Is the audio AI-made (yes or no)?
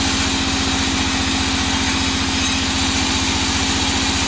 no